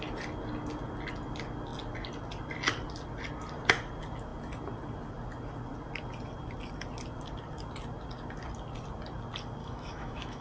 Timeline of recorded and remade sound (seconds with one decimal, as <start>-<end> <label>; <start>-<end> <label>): 0.0-9.6 recorded; 9.6-10.4 remade

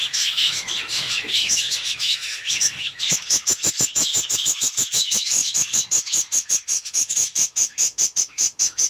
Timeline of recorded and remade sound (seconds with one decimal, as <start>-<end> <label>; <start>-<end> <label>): 0.0-8.9 remade

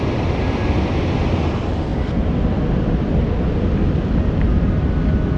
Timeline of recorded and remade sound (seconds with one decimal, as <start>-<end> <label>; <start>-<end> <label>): 0.0-5.4 recorded

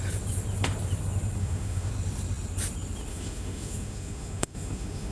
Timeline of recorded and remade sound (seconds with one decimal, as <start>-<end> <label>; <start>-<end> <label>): 0.0-1.4 recorded; 1.4-1.9 remade; 1.9-3.1 recorded; 3.1-5.1 remade

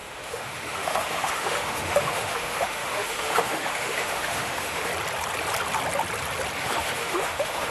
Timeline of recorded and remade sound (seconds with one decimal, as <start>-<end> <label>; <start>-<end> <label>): 0.0-4.9 remade; 4.9-6.6 recorded; 6.6-7.7 remade

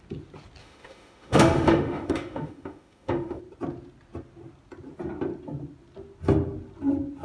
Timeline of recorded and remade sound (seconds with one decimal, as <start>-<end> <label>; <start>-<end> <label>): 0.0-0.6 recorded; 0.6-3.4 remade; 3.4-7.2 recorded

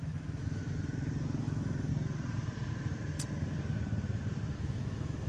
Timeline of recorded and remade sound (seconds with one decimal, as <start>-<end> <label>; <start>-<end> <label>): 0.0-0.6 remade; 0.6-1.4 recorded; 1.4-1.9 remade; 1.9-4.6 recorded; 4.6-5.3 remade

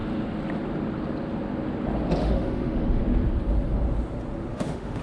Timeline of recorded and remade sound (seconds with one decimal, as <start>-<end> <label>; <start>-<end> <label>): 0.0-2.2 recorded; 2.2-3.0 remade; 3.0-4.5 recorded; 4.5-5.0 remade